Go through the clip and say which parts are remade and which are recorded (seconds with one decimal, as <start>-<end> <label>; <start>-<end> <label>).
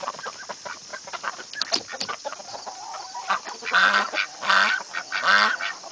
0.0-5.9 recorded